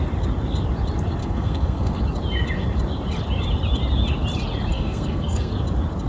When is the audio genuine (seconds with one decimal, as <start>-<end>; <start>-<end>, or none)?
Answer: 0.0-1.2; 2.0-4.7; 5.5-6.1